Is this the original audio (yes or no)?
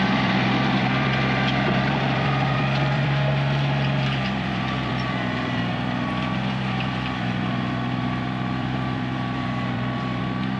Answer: no